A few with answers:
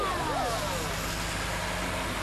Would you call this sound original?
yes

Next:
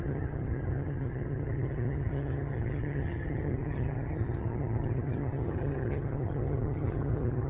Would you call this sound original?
no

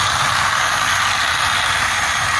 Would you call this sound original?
yes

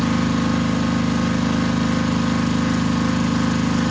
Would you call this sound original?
yes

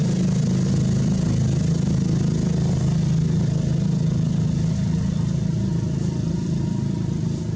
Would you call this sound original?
yes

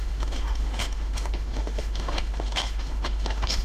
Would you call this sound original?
no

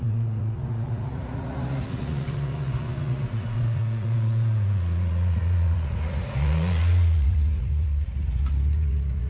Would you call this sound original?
no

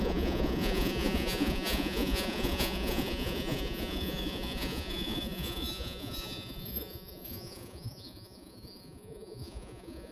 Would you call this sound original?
no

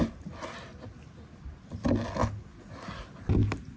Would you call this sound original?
yes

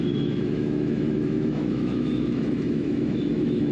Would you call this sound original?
no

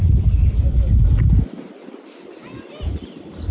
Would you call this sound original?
yes